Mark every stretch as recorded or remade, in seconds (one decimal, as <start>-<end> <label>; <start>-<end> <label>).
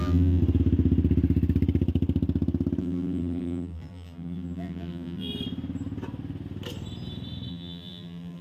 0.0-0.4 remade; 0.4-2.8 recorded; 2.8-5.3 remade; 5.3-7.5 recorded; 7.5-8.4 remade